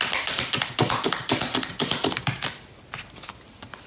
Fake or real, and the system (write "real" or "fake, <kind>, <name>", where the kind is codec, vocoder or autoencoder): real